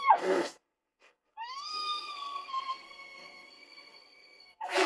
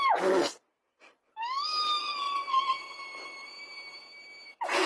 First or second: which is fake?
first